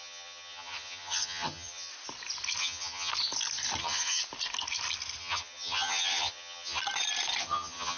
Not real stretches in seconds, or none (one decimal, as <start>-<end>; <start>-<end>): 0.0-1.9; 2.6-3.1; 3.8-4.2; 5.2-6.8; 7.4-8.0